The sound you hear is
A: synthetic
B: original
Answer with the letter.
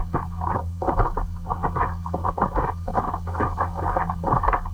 A